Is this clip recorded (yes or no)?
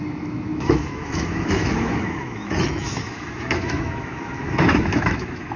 no